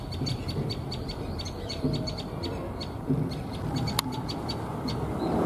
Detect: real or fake fake